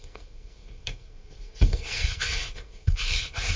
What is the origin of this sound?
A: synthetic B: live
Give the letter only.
A